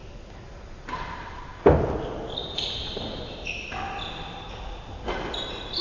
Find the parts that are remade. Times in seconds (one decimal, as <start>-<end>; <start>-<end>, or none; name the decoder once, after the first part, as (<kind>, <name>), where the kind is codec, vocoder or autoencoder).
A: 2.4-3.7 (vocoder, BigVGAN v2)